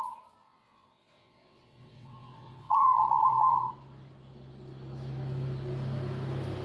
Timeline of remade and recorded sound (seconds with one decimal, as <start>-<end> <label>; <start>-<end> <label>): 0.0-0.4 recorded; 0.4-3.7 remade; 3.7-6.6 recorded